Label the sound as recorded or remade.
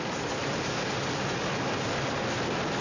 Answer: recorded